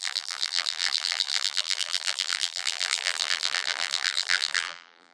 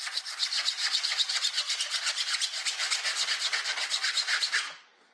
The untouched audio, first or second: second